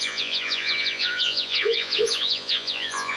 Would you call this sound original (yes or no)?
no